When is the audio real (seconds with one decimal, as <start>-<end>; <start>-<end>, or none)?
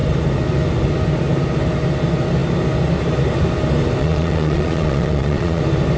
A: 0.0-4.0; 5.6-6.0